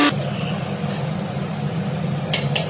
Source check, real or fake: real